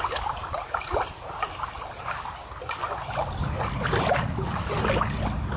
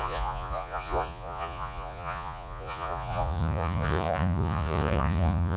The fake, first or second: second